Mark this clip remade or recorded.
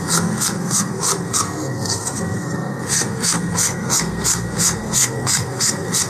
remade